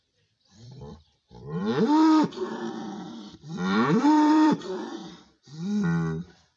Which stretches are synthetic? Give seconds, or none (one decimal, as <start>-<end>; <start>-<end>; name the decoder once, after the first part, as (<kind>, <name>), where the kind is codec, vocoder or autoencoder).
0.0-1.6 (vocoder, BigVGAN v2); 2.8-5.0